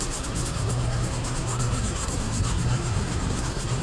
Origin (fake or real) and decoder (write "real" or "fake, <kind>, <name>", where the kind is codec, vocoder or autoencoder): fake, codec, SNAC